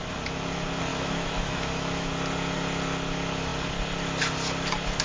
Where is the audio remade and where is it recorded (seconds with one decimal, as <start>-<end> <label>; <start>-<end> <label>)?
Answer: 0.0-0.9 recorded; 0.9-2.1 remade; 2.1-5.0 recorded